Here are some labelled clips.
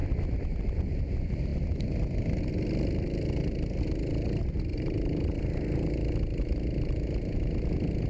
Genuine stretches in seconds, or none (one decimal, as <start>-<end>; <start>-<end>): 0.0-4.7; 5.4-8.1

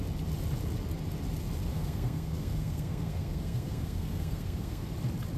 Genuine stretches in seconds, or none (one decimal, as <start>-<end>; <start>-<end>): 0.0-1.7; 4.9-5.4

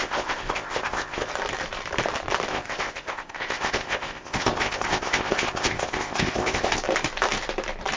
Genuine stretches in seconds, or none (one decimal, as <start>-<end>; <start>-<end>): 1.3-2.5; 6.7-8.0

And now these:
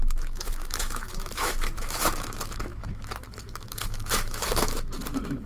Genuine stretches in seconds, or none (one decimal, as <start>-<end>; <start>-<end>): none